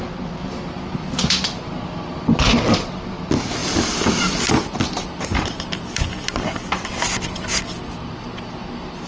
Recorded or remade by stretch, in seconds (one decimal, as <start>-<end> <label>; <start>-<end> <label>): 0.0-9.1 recorded